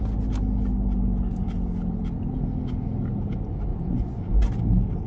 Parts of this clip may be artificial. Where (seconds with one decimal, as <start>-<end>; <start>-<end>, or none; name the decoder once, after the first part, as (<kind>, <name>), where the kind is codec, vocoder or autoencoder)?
3.7-4.6 (vocoder, Vocos)